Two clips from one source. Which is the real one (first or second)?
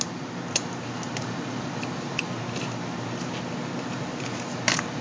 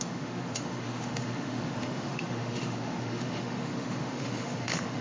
first